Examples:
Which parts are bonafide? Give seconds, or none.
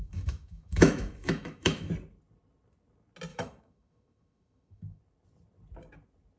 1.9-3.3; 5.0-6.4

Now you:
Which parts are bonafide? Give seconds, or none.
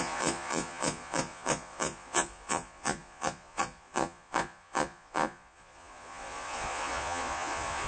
none